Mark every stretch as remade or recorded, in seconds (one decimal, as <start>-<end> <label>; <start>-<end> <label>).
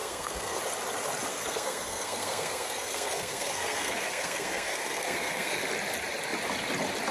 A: 0.0-0.6 remade; 0.6-1.3 recorded; 1.3-5.6 remade; 5.6-7.1 recorded